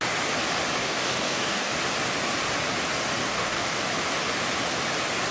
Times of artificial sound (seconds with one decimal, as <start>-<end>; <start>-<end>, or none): 0.8-1.7; 3.2-3.9